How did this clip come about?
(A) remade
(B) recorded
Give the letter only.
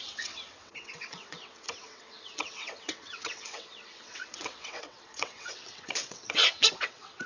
A